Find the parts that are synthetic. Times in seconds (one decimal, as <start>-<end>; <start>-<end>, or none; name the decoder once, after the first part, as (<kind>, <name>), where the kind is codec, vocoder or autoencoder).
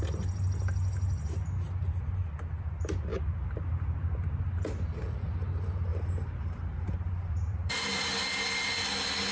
5.9-7.9 (vocoder, BigVGAN v2)